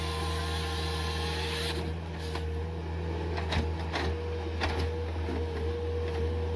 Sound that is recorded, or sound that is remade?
recorded